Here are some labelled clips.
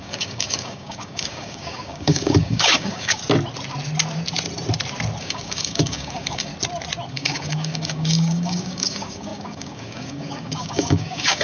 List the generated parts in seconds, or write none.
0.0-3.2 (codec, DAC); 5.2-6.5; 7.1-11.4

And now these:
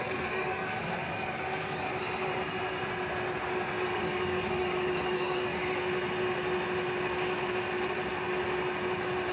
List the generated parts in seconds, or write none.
0.0-1.9 (codec, DAC); 4.0-5.5